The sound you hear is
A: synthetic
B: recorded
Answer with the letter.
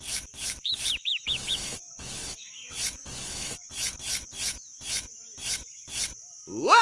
A